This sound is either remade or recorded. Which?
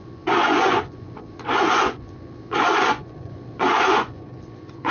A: remade